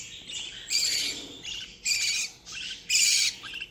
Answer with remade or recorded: recorded